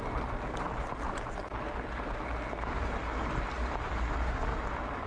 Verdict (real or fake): real